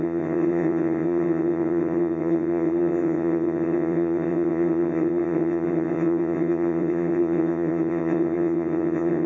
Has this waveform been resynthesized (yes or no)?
yes